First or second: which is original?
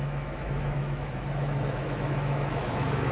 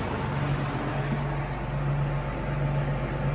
second